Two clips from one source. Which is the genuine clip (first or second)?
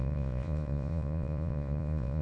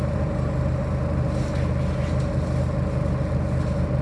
second